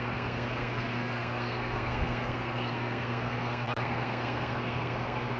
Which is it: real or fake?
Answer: fake